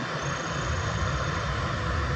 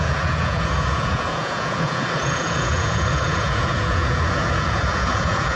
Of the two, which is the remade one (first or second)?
second